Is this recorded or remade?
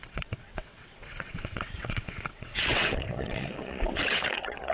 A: remade